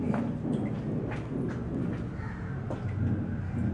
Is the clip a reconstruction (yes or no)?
no